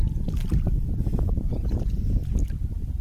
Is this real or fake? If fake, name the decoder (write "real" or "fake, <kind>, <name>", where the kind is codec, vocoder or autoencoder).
real